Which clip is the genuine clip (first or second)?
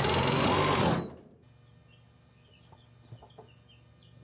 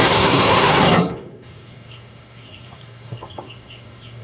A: first